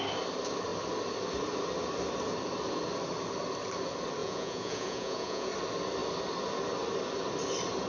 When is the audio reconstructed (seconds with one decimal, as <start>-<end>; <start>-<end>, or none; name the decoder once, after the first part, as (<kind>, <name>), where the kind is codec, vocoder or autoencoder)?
4.2-5.5 (vocoder, Vocos)